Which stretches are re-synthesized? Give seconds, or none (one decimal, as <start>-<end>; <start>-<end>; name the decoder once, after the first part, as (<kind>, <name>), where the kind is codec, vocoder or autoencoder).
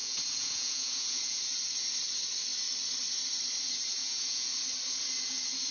0.0-1.4 (vocoder, Vocos); 4.0-4.5